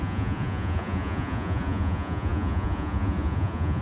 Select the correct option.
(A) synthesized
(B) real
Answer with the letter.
A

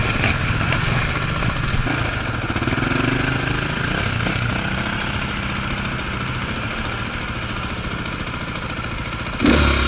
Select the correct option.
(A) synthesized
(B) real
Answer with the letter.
B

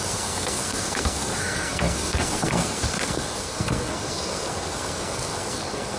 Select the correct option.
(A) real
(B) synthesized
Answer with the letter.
B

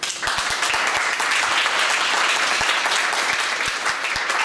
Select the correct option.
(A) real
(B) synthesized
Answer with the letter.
A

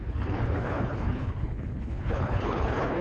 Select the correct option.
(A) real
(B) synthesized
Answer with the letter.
B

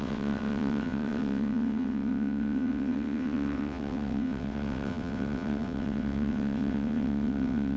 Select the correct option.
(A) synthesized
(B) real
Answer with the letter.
A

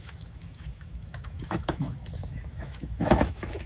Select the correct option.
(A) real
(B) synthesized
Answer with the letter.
B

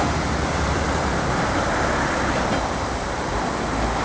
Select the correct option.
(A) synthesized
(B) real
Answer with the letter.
B